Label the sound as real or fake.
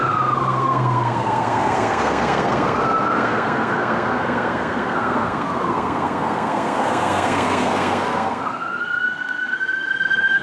fake